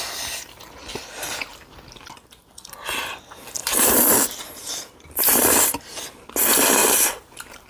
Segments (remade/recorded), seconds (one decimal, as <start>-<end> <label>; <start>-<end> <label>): 0.0-3.6 recorded; 3.6-5.5 remade; 5.5-6.8 recorded; 6.8-7.7 remade